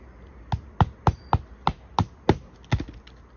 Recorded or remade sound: recorded